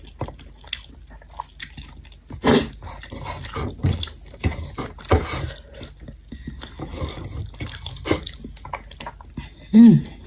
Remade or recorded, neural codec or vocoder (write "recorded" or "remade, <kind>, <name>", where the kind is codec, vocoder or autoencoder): recorded